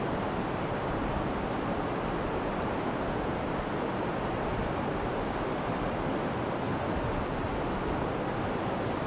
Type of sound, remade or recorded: recorded